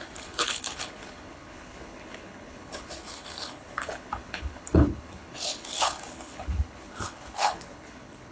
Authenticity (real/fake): fake